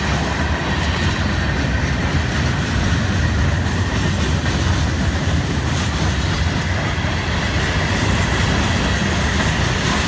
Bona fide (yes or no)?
yes